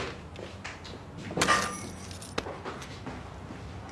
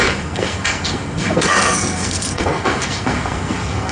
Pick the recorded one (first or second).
first